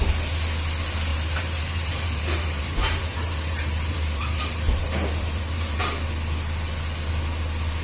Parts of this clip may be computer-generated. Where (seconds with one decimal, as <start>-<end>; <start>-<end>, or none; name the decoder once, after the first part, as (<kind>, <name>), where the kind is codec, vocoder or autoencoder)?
1.1-5.8 (vocoder, BigVGAN v2)